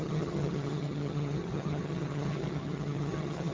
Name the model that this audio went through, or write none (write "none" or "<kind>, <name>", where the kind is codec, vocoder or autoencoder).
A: vocoder, HiFi-GAN